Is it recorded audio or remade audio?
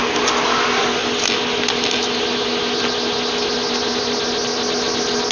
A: recorded